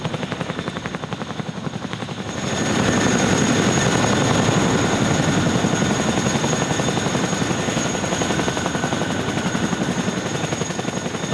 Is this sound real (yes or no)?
yes